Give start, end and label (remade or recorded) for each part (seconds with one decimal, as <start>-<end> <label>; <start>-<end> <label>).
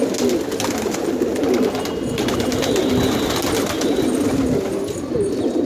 0.0-5.7 recorded